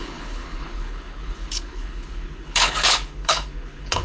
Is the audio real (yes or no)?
no